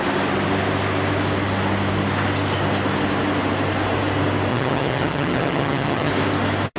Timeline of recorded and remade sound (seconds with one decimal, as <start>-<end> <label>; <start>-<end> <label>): 0.0-4.5 recorded; 4.5-6.1 remade; 6.1-6.8 recorded